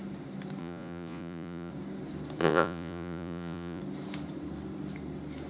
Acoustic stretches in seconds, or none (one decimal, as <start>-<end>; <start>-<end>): 0.0-0.6; 1.7-2.4; 3.8-5.5